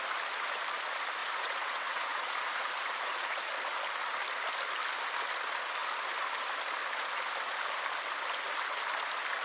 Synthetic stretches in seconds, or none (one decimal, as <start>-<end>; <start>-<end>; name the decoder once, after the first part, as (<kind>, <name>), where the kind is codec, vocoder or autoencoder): 1.2-3.5 (vocoder, Vocos)